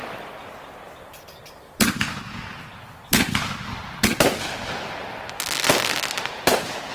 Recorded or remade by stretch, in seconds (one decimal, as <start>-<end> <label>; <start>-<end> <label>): 0.0-6.9 recorded

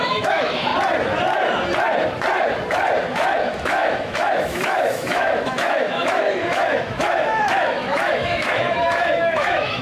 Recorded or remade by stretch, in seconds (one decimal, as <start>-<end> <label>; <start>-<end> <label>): 0.0-0.7 remade; 0.7-3.1 recorded; 3.1-9.8 remade

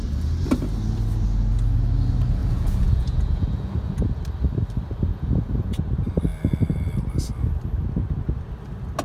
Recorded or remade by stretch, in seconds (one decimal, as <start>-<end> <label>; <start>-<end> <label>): 0.0-2.4 recorded; 2.4-4.2 remade; 4.2-5.1 recorded; 5.1-5.8 remade; 5.8-9.0 recorded

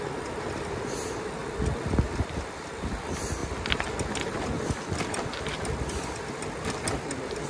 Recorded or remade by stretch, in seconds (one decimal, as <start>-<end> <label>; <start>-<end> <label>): 0.0-7.5 recorded